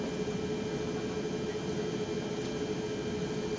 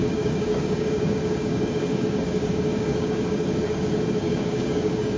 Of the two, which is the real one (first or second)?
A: first